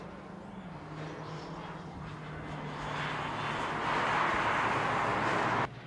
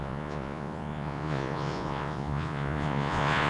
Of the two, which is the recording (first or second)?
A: first